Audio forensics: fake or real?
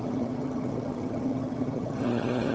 fake